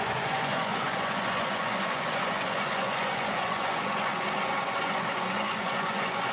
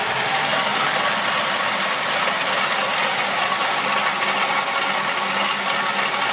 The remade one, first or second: first